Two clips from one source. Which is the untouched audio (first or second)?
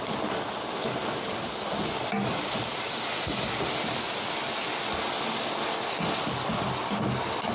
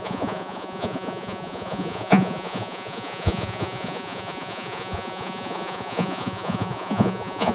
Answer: first